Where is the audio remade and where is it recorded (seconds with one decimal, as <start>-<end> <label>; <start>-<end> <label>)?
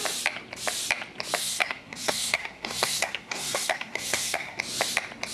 0.0-1.4 recorded; 1.4-4.6 remade; 4.6-5.3 recorded